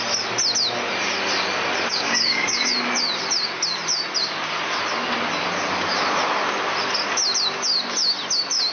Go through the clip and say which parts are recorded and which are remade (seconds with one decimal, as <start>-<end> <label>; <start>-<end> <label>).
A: 0.0-1.9 recorded; 1.9-2.7 remade; 2.7-8.7 recorded